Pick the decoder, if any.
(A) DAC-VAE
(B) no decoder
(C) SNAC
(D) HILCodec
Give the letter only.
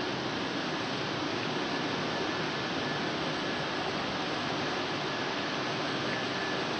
B